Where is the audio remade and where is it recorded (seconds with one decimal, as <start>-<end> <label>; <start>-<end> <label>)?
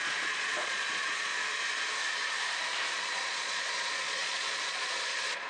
0.0-1.3 remade; 1.3-2.9 recorded; 2.9-5.5 remade